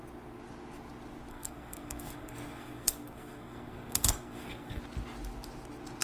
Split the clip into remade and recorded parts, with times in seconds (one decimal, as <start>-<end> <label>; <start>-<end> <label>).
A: 0.0-1.3 recorded; 1.3-4.8 remade; 4.8-6.0 recorded